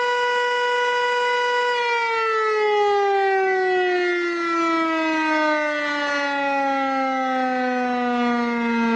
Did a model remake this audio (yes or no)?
no